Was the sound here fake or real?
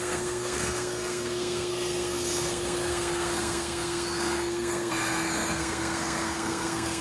fake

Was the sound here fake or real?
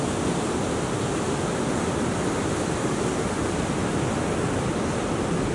real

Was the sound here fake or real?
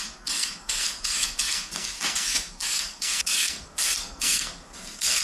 fake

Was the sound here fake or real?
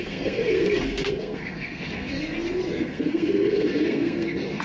fake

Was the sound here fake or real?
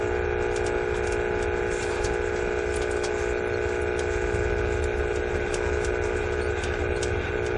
real